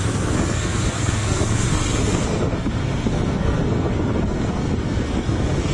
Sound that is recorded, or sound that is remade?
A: remade